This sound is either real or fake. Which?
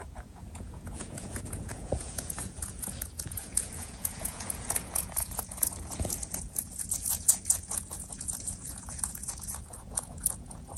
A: fake